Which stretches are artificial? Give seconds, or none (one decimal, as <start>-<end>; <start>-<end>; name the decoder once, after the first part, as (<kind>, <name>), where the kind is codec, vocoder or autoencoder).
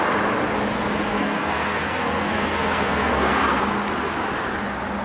1.1-3.6 (codec, SNAC)